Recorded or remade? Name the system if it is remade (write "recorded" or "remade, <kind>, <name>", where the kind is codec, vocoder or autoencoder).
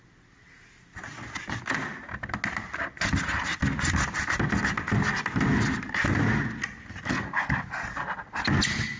recorded